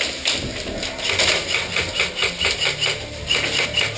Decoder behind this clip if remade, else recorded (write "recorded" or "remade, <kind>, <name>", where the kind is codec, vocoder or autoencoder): recorded